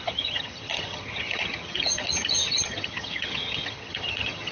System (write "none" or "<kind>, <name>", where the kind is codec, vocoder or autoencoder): vocoder, HiFi-GAN